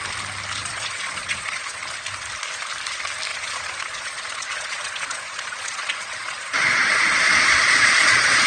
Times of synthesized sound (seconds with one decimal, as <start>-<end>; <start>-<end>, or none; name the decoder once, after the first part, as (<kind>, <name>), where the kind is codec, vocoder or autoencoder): 0.6-1.8 (vocoder, Vocos); 3.3-8.5